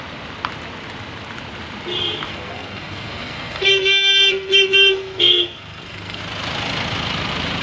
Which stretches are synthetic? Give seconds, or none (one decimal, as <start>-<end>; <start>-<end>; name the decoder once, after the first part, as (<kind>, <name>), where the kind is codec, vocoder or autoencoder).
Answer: 2.3-6.2 (codec, SNAC)